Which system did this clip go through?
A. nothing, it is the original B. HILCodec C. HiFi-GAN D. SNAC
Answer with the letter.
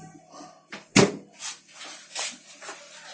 A